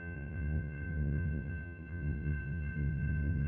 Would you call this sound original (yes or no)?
no